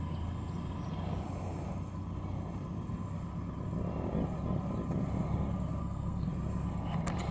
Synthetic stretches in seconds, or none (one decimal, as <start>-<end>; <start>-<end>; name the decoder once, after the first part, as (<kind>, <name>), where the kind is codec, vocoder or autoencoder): 5.8-6.3 (codec, SNAC)